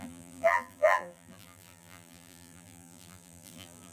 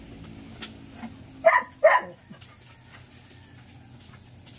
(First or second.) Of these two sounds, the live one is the second